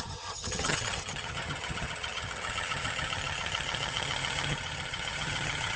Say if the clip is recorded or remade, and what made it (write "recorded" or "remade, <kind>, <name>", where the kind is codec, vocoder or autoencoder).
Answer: remade, vocoder, HiFi-GAN